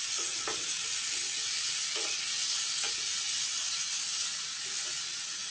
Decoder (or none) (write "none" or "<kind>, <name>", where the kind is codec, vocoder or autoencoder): none